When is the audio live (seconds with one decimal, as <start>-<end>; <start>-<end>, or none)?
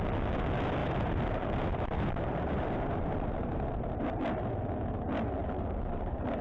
0.0-0.8; 4.1-5.4